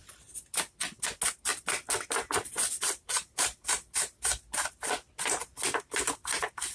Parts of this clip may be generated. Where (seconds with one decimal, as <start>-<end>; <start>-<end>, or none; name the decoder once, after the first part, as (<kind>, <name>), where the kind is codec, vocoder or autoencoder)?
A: none